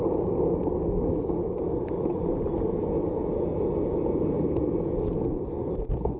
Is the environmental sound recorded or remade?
recorded